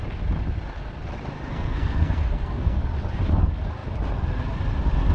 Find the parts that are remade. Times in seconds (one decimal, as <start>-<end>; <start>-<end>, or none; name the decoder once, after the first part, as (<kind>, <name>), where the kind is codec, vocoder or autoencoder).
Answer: 1.5-2.8 (codec, SNAC)